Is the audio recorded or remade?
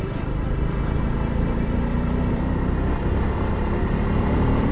remade